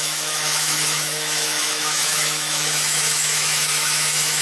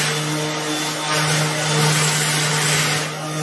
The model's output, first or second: first